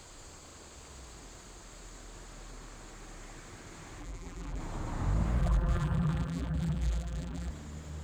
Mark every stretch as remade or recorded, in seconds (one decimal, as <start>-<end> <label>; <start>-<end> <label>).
0.0-4.0 recorded; 4.0-4.6 remade; 4.6-5.4 recorded; 5.4-7.5 remade; 7.5-8.0 recorded